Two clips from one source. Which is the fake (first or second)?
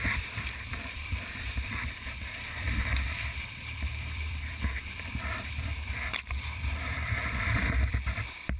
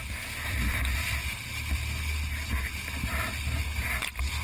first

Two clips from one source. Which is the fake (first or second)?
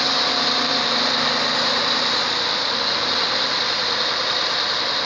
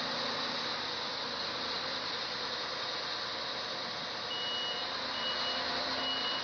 first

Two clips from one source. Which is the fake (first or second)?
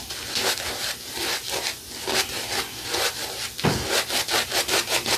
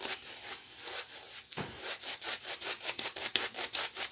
second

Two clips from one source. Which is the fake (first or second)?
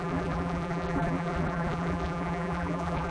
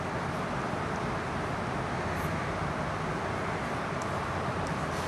first